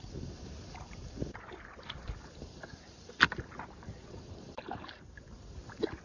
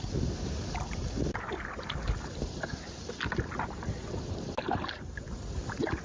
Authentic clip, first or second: second